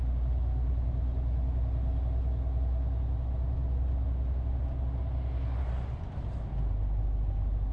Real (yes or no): yes